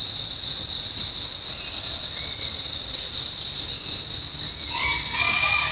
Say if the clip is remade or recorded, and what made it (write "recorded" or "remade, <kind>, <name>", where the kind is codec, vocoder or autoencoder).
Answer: recorded